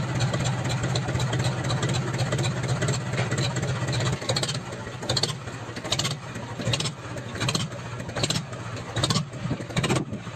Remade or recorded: recorded